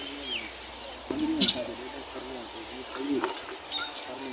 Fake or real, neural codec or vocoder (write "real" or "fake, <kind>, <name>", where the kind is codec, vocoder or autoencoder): real